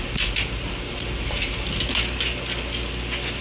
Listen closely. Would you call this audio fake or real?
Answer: real